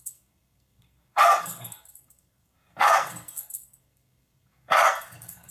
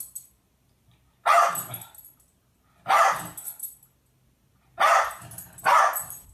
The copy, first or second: first